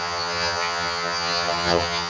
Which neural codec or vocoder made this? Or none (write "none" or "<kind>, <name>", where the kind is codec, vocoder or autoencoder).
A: vocoder, HiFi-GAN